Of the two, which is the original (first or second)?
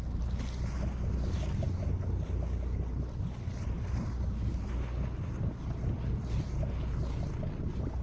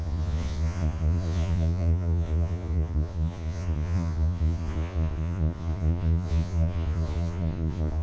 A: first